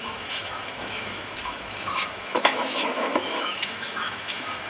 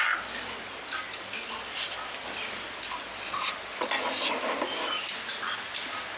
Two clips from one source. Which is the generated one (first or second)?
first